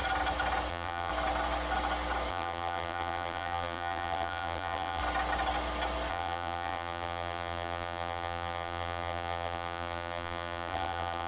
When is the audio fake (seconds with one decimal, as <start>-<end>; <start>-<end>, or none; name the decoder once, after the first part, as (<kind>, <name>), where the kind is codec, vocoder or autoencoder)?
0.7-1.1 (vocoder, BigVGAN v2); 2.3-5.0; 6.1-11.3